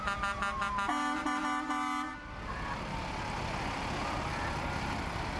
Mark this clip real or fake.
real